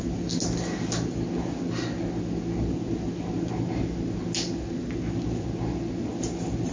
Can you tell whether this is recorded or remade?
recorded